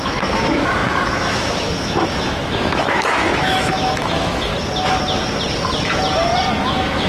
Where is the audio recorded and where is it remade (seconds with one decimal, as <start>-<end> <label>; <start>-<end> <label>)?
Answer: 0.0-4.5 remade; 4.5-6.6 recorded; 6.6-7.1 remade